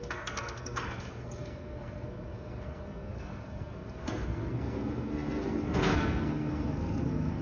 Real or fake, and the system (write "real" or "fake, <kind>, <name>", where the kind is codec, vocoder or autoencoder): fake, codec, SNAC